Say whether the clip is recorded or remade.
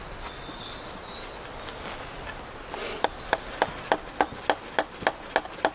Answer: recorded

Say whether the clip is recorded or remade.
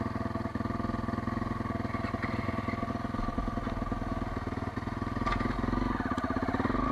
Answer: recorded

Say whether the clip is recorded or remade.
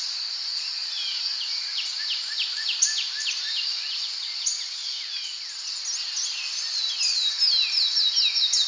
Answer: recorded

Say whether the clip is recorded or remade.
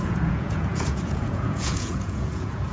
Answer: remade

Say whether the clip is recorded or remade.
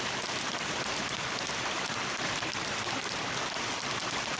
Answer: recorded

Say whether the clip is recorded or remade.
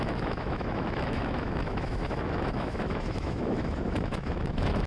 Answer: remade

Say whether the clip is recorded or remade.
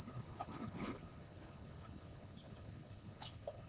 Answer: remade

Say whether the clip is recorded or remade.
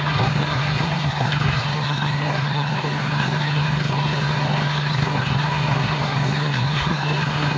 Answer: remade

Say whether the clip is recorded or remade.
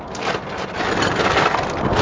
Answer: recorded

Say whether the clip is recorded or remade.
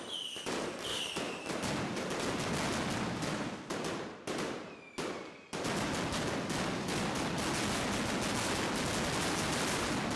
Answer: recorded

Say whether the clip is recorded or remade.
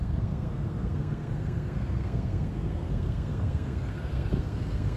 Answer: remade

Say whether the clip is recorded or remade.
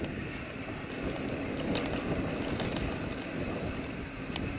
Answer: recorded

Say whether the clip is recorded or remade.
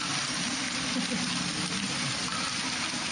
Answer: recorded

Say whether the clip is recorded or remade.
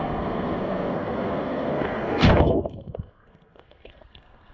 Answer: remade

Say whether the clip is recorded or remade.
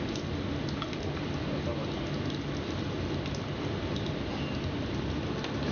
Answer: recorded